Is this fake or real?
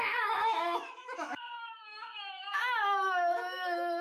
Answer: fake